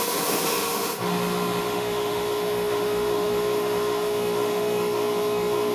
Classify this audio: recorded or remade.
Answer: remade